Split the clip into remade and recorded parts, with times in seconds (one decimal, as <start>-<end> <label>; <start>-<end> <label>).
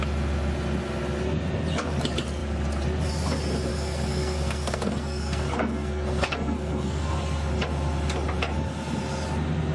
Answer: 0.0-3.7 recorded; 3.7-7.2 remade; 7.2-9.7 recorded